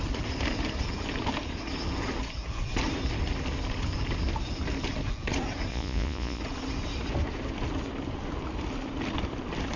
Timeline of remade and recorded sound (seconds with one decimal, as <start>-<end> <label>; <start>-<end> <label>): 0.0-5.7 recorded; 5.7-6.4 remade; 6.4-9.8 recorded